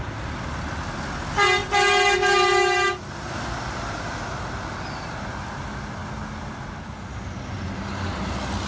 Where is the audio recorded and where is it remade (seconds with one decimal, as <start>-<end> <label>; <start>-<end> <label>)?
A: 0.0-8.7 recorded